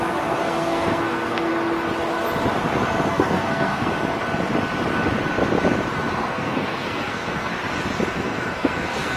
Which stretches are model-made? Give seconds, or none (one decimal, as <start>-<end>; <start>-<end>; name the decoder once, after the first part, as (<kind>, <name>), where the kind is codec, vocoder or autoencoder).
0.0-1.5 (codec, SNAC); 3.1-3.9; 6.3-7.5; 8.1-9.2